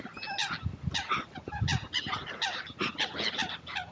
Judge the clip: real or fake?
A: real